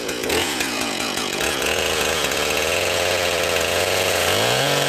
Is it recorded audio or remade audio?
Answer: remade